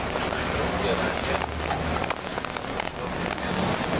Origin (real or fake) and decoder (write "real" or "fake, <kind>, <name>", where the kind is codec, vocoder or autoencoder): real